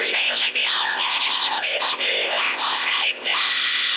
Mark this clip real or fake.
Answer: fake